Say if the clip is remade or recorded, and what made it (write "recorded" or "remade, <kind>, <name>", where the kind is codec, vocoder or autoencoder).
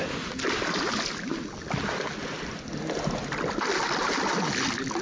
recorded